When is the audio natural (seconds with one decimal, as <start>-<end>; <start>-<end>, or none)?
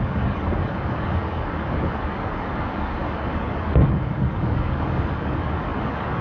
none